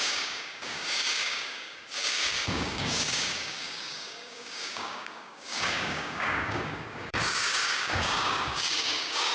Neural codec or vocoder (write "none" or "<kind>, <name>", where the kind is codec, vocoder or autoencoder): codec, DAC